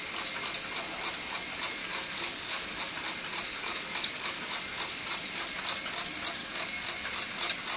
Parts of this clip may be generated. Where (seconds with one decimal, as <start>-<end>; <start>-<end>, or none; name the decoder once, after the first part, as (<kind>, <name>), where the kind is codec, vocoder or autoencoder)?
1.8-2.8 (codec, DAC); 3.5-4.5; 6.4-7.2